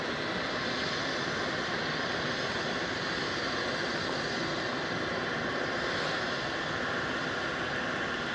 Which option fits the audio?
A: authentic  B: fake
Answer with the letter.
A